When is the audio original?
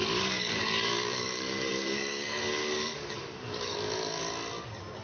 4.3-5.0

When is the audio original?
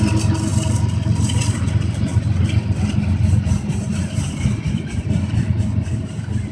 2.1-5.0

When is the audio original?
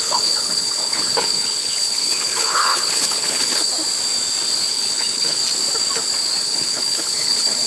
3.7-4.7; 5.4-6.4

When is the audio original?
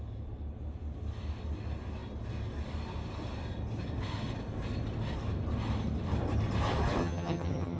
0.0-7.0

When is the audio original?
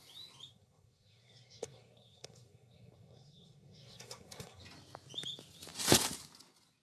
0.0-0.5; 4.6-6.8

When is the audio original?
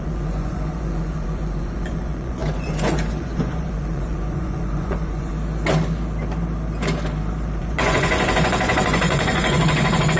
5.3-7.6